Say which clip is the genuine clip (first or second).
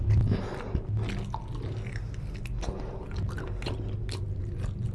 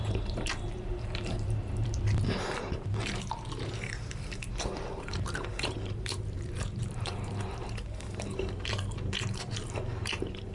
first